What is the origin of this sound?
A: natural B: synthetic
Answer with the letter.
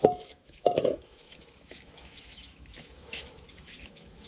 B